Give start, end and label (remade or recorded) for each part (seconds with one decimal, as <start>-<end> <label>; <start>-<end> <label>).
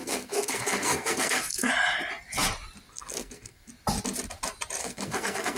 0.0-1.7 remade; 1.7-2.9 recorded; 2.9-3.7 remade; 3.7-4.8 recorded; 4.8-5.6 remade